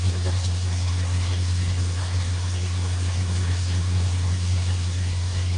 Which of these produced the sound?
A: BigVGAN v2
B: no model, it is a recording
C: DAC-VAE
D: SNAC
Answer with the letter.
D